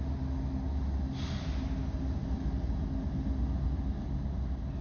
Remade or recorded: recorded